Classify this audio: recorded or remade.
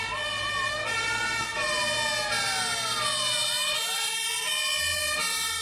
recorded